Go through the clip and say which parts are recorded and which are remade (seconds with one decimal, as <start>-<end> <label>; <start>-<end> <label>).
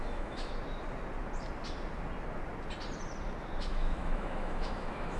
0.0-0.5 remade; 0.5-3.6 recorded; 3.6-5.2 remade